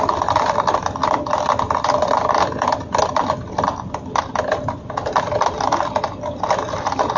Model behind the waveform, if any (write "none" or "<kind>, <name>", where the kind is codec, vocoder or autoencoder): none